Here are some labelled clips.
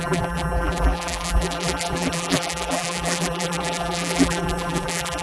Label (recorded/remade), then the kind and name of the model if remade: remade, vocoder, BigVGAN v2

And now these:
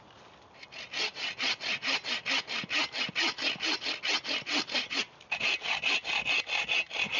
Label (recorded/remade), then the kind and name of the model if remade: recorded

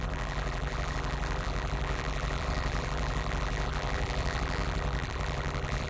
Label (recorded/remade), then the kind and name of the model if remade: remade, vocoder, BigVGAN v2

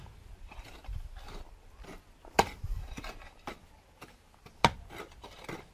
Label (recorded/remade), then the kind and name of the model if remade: recorded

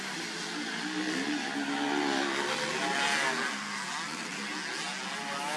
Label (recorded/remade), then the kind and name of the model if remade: recorded